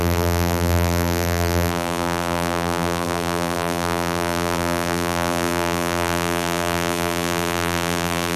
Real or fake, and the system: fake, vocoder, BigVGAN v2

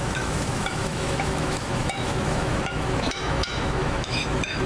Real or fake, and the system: fake, autoencoder, DAC-VAE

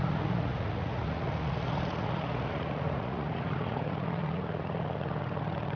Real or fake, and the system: fake, vocoder, Vocos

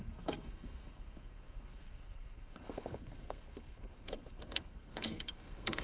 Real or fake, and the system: fake, codec, SNAC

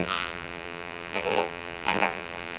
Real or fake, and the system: fake, vocoder, BigVGAN v2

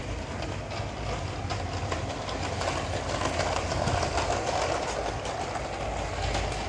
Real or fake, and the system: real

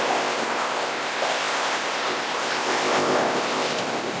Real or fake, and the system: fake, codec, ZipCodec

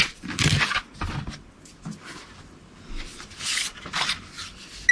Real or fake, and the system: real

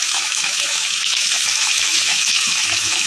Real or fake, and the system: fake, autoencoder, DAC-VAE